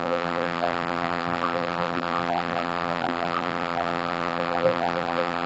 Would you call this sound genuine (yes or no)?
no